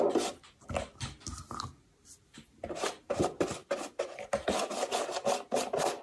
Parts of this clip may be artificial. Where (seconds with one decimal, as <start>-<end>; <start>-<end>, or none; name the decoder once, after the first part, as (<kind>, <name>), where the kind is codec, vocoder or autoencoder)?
2.6-3.2 (vocoder, BigVGAN v2)